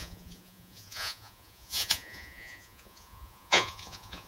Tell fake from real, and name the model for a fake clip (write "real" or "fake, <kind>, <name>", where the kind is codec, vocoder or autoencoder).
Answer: fake, vocoder, Vocos